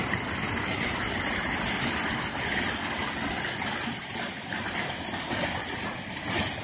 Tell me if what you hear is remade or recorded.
recorded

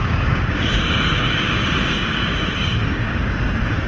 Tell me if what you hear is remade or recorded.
remade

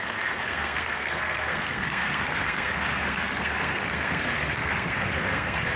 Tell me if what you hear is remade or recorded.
remade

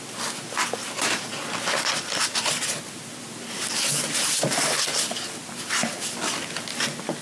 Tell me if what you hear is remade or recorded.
recorded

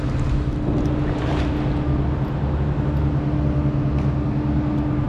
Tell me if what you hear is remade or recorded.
recorded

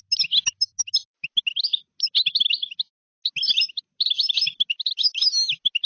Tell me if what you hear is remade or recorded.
recorded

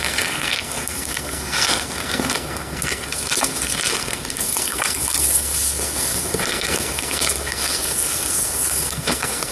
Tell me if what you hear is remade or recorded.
remade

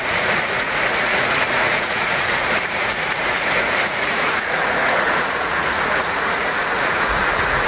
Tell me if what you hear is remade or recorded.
remade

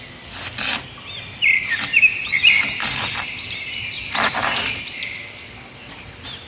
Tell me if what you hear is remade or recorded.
recorded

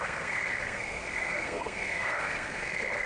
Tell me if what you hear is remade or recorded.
remade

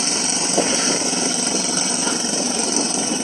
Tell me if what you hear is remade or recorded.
remade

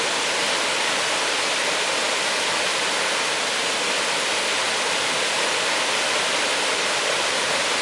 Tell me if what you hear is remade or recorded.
recorded